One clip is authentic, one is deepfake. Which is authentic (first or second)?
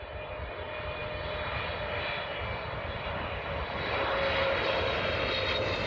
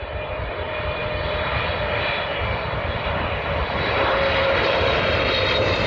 first